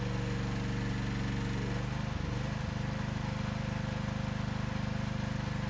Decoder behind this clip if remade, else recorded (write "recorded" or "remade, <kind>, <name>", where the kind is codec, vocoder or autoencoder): recorded